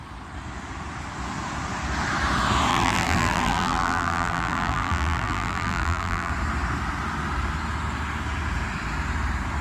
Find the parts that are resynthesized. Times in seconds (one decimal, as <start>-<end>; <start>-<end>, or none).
2.7-6.3